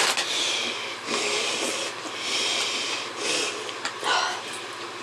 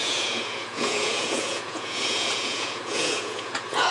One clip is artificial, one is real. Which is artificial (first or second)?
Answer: second